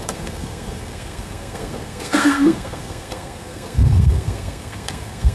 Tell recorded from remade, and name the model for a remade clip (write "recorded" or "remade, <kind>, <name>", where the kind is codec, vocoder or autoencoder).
remade, codec, SNAC